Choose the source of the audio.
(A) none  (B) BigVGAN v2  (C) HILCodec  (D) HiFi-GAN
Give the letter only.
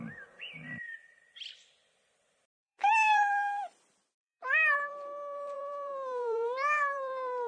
B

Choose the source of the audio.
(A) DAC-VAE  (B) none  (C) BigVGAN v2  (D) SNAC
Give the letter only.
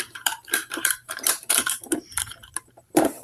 C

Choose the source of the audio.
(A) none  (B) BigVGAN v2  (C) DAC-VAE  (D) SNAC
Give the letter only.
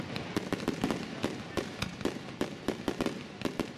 A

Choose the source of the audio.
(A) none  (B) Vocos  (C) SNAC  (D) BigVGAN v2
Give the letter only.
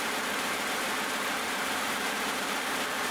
D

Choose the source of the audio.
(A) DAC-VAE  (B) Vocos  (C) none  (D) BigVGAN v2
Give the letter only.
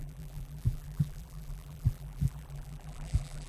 D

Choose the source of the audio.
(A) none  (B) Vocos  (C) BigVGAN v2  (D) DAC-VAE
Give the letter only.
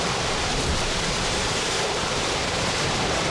C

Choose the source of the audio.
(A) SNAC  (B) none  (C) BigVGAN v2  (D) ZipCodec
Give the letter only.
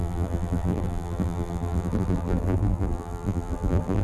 C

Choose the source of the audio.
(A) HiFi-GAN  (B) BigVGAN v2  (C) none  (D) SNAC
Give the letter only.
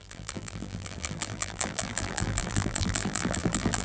B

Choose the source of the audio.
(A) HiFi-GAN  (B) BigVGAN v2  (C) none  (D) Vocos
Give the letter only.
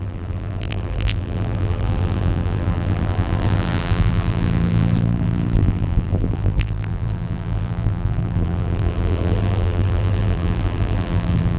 B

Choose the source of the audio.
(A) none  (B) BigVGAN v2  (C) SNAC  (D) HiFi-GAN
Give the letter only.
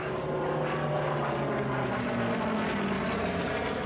A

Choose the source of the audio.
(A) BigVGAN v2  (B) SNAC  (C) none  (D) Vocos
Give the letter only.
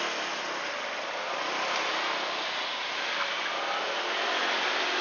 C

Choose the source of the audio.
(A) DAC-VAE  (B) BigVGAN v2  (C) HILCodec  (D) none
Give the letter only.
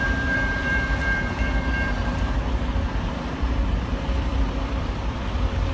B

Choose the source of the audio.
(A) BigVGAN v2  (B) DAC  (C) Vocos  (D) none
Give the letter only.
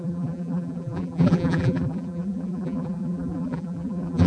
A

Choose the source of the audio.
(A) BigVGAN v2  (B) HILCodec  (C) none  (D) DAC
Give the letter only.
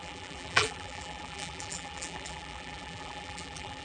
A